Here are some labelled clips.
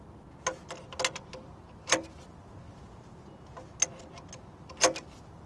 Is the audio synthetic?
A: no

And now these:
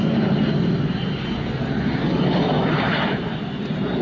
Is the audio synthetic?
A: no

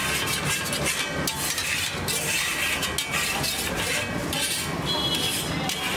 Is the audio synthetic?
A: no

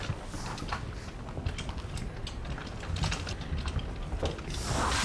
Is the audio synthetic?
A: no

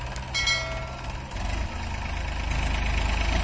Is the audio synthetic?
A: no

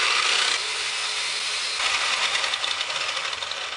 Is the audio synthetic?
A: no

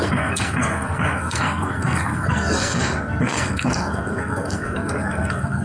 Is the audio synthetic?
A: yes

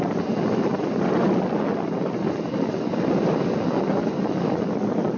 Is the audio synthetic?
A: no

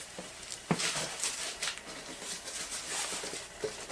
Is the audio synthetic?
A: no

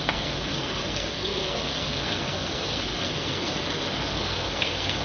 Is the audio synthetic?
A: yes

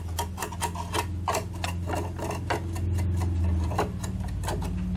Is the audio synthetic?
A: no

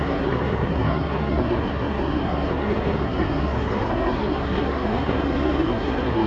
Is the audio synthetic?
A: yes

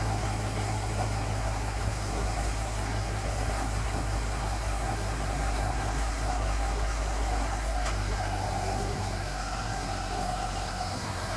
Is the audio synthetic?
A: yes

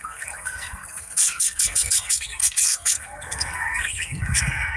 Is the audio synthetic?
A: yes